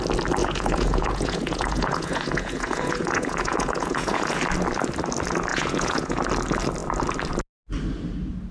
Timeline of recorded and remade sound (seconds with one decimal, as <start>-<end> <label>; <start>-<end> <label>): 0.0-0.4 recorded; 0.4-4.4 remade; 4.4-5.5 recorded; 5.5-6.2 remade; 6.2-8.5 recorded